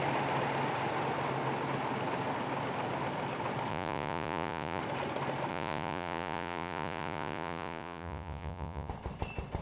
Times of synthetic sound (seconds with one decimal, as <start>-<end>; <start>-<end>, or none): 3.7-4.8; 5.5-8.9